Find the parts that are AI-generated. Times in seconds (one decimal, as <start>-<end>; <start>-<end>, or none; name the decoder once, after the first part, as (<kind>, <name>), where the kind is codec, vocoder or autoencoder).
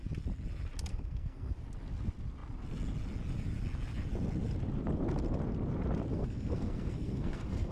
0.9-1.5 (codec, SNAC); 6.1-7.7